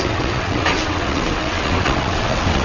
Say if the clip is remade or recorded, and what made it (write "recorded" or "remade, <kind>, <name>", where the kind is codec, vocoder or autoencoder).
remade, vocoder, WaveNeXt